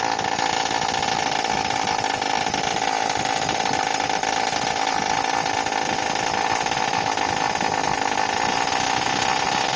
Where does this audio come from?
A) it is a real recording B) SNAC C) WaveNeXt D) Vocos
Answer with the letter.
A